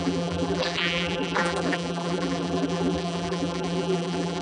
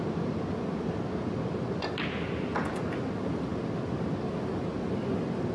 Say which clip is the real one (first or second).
second